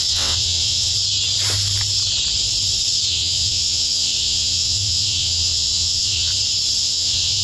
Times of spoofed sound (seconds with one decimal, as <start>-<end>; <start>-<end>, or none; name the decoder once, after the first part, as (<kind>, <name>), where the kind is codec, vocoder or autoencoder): 0.0-0.9 (vocoder, WaveNeXt); 3.1-6.3; 6.8-7.4